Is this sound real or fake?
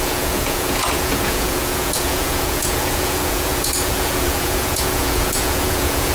fake